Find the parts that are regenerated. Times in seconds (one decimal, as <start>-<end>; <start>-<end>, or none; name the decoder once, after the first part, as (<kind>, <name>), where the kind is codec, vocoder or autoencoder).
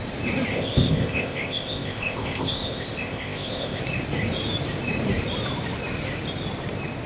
0.5-3.8 (codec, ZipCodec)